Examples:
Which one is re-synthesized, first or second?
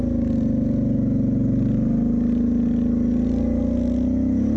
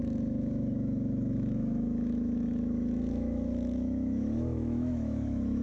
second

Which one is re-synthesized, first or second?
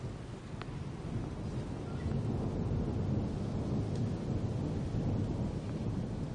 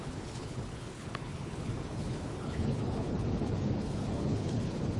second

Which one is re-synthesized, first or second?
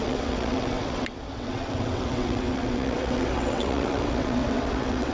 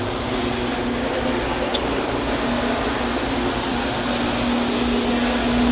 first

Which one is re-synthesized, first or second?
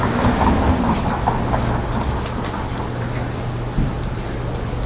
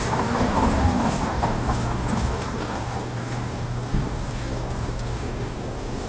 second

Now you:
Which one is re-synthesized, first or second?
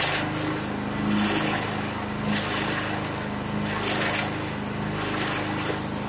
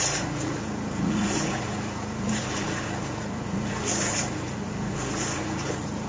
second